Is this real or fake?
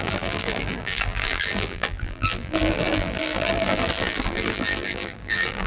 fake